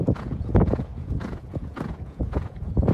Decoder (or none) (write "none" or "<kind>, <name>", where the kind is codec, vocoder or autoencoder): vocoder, Vocos